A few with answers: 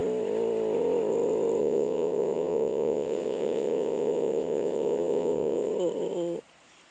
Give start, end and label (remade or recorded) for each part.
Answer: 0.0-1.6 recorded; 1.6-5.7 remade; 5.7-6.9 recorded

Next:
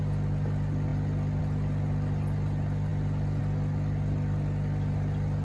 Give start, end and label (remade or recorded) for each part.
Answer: 0.0-5.4 recorded

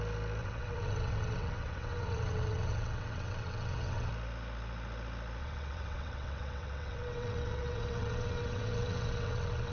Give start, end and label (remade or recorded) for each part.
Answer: 0.0-0.4 recorded; 0.4-4.1 remade; 4.1-5.4 recorded; 5.4-9.7 remade

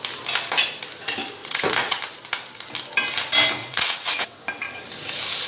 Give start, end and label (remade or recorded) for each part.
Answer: 0.0-1.4 recorded; 1.4-2.0 remade; 2.0-3.6 recorded; 3.6-4.4 remade; 4.4-5.5 recorded

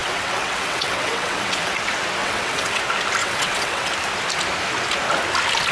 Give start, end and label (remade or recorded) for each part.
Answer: 0.0-1.8 remade; 1.8-2.2 recorded; 2.2-2.8 remade; 2.8-3.2 recorded; 3.2-3.9 remade; 3.9-5.7 recorded

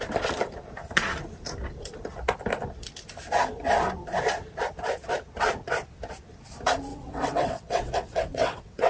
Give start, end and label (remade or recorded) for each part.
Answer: 0.0-6.9 recorded; 6.9-8.9 remade